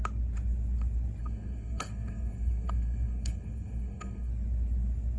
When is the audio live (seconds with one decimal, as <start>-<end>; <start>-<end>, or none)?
0.0-1.2; 4.3-5.2